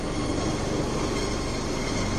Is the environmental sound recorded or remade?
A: recorded